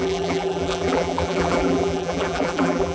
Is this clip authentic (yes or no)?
no